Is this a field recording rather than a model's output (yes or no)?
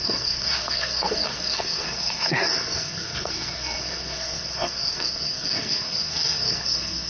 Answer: no